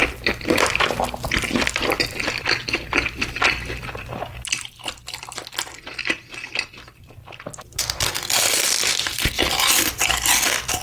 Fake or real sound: real